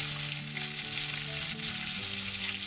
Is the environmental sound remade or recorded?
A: recorded